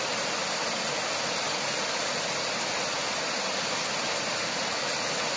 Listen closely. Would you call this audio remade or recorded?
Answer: recorded